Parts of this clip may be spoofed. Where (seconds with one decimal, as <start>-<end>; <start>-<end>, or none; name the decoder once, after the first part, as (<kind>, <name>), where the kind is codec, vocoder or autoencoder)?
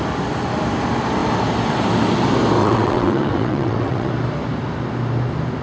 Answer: 2.6-4.1 (vocoder, WaveNeXt)